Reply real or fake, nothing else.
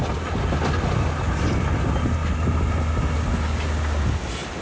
real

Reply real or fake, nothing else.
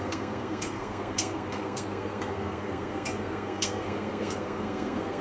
fake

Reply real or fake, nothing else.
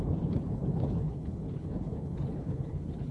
fake